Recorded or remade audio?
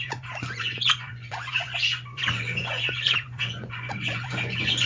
remade